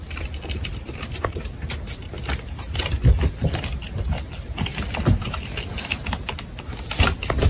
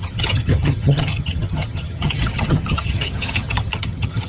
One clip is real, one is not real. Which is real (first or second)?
first